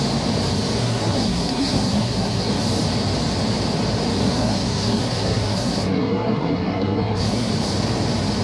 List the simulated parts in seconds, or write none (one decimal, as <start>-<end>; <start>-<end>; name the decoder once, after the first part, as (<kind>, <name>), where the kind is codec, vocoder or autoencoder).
0.8-2.5 (codec, SNAC); 4.2-7.5

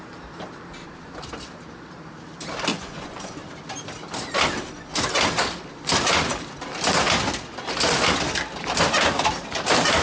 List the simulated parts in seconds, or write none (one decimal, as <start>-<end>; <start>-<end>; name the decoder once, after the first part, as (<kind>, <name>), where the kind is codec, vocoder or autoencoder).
2.7-3.4 (vocoder, Vocos)

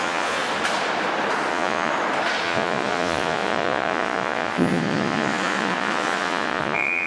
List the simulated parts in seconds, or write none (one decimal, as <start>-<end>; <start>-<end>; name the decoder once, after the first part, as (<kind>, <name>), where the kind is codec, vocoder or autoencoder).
0.0-0.4 (vocoder, Vocos); 1.5-1.9; 2.4-7.1

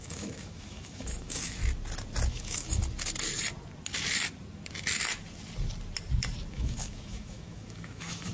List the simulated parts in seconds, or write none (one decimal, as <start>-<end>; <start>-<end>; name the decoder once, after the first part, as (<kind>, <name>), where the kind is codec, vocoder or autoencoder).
0.0-1.6 (autoencoder, DAC-VAE); 2.3-2.8; 6.5-8.3

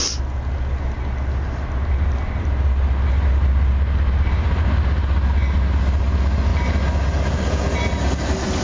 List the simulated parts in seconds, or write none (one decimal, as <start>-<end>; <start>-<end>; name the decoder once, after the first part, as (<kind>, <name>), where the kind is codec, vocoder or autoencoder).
none

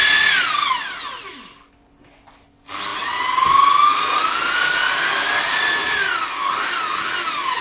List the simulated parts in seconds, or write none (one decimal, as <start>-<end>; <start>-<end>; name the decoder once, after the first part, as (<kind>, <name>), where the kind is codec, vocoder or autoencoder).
none

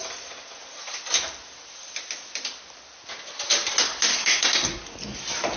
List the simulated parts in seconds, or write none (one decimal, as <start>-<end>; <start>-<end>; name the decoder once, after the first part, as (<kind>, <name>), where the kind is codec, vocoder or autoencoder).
4.1-4.8 (codec, SNAC)

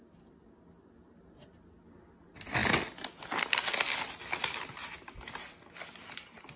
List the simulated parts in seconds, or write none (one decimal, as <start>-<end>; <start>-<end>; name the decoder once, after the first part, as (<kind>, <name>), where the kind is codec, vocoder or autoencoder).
none